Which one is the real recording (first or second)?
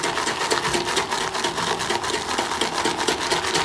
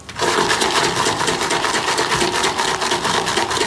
first